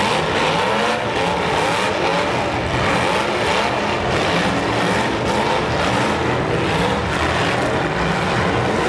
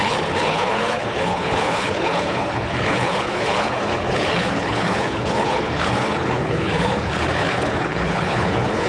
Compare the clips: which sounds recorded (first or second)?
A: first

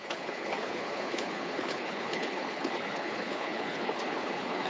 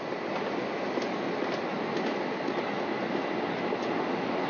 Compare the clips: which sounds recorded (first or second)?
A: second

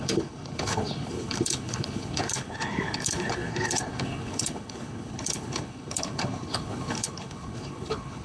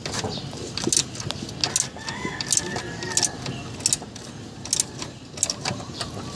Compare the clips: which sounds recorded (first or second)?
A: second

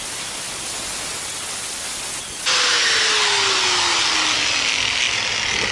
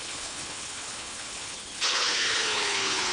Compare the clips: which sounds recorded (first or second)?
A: first